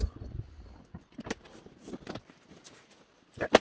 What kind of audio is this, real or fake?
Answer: real